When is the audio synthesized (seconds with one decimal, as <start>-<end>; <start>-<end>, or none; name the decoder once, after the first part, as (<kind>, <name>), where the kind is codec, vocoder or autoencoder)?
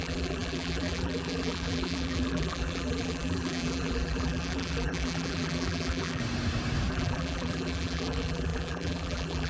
0.0-6.2 (vocoder, BigVGAN v2); 6.9-9.5